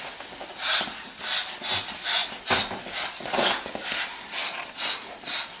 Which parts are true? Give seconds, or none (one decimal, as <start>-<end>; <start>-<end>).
0.0-5.6